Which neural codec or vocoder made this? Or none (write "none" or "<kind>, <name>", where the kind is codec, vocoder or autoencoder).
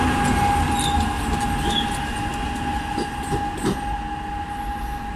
none